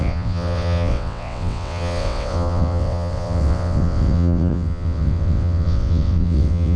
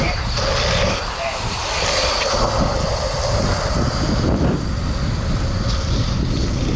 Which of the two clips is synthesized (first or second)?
first